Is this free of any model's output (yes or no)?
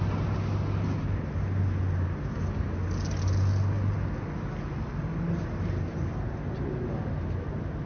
yes